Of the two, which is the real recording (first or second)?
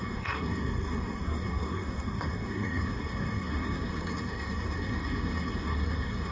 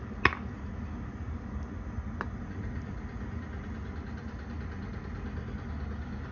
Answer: second